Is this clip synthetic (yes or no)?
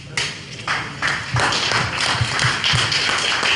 no